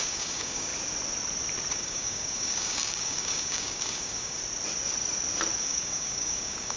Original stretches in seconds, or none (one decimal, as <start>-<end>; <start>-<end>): 0.7-1.7; 4.4-5.6